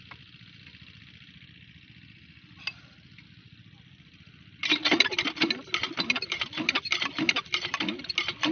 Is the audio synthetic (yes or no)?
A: no